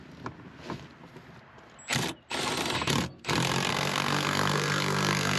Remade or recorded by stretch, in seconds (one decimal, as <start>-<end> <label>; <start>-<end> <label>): 0.0-3.7 recorded; 3.7-5.4 remade